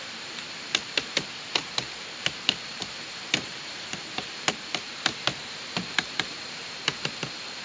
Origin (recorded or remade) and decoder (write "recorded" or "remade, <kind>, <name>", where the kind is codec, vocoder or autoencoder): remade, vocoder, BigVGAN v2